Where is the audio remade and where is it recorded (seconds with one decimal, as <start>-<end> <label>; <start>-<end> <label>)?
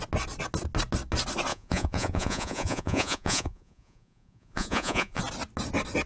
0.0-1.5 recorded; 1.5-5.2 remade; 5.2-6.1 recorded